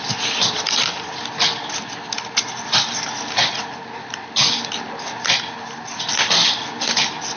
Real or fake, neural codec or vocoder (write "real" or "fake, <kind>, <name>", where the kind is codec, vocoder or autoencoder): real